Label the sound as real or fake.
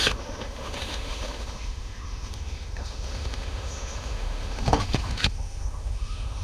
fake